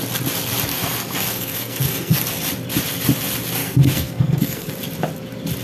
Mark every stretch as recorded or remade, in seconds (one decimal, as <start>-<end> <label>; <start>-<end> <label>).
0.0-0.7 recorded; 0.7-2.2 remade; 2.2-3.6 recorded; 3.6-4.7 remade; 4.7-5.6 recorded